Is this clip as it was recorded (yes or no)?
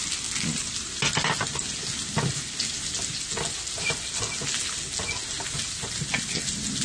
yes